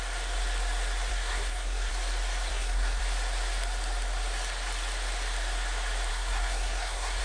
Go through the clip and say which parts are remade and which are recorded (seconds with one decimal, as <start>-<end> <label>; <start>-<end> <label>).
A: 0.0-1.1 recorded; 1.1-1.9 remade; 1.9-2.5 recorded; 2.5-3.0 remade; 3.0-6.1 recorded; 6.1-7.2 remade